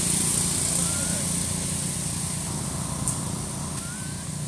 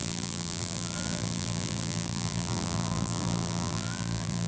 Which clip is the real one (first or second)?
first